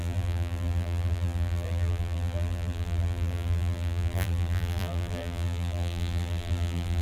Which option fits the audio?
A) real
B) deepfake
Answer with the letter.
B